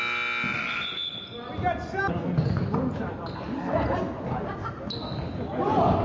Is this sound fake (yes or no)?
no